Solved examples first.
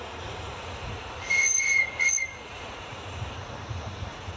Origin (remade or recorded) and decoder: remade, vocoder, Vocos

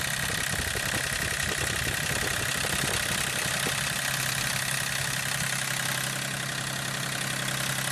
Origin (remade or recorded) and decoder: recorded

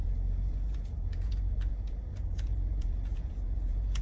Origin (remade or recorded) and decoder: remade, vocoder, Vocos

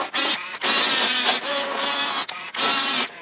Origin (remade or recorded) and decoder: recorded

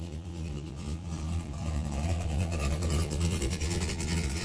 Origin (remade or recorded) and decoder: remade, vocoder, Vocos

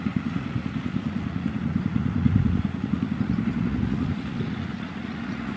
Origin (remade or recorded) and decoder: remade, vocoder, Vocos